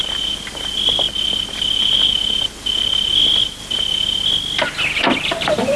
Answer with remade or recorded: recorded